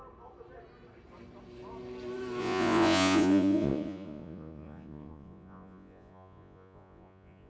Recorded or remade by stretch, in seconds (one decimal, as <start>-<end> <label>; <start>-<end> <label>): 0.0-2.4 recorded; 2.4-7.5 remade